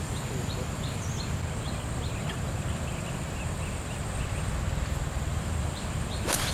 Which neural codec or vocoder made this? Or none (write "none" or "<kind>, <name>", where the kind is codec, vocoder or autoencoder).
vocoder, BigVGAN v2